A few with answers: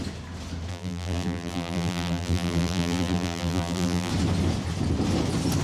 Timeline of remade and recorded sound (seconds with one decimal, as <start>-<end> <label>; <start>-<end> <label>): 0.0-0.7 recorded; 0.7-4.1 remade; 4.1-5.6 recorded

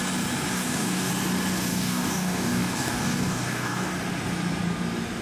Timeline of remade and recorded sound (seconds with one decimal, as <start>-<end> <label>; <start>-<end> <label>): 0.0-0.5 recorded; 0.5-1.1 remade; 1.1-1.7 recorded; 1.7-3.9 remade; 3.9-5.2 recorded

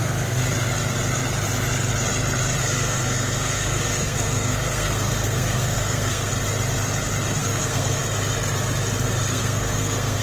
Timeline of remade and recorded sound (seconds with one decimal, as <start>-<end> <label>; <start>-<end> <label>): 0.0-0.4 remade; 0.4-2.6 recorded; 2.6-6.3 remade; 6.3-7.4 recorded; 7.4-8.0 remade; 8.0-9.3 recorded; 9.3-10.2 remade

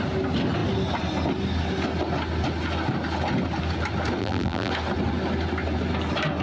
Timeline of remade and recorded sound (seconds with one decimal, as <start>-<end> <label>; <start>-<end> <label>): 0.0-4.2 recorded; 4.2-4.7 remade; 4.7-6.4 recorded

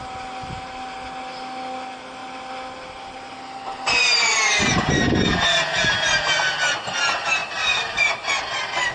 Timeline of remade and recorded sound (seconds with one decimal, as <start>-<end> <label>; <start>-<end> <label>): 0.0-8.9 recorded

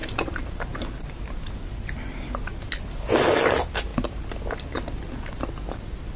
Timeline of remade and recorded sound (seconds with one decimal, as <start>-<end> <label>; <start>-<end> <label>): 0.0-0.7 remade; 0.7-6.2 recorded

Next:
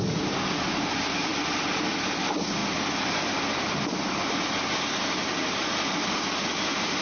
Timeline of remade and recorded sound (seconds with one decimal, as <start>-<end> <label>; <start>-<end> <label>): 0.0-7.0 recorded

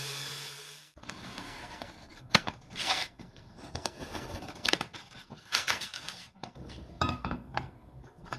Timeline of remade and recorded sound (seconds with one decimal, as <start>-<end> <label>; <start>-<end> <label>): 0.0-8.4 remade